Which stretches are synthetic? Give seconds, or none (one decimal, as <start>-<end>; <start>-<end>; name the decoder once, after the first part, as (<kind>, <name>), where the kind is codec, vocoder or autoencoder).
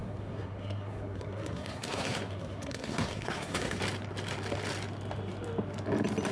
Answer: 0.0-3.8 (codec, SNAC)